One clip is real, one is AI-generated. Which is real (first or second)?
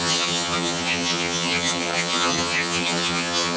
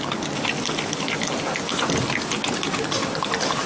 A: second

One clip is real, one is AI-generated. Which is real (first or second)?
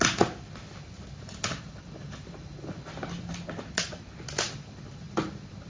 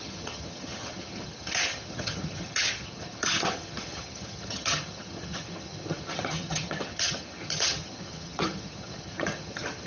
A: first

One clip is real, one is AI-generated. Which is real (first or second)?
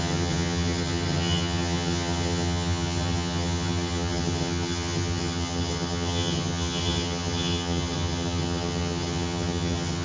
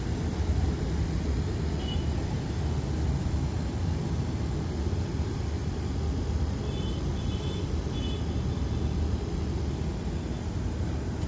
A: second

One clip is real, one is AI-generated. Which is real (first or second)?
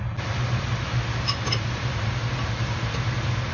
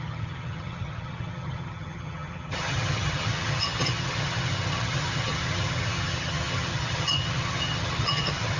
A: first